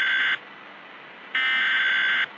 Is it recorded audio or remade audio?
recorded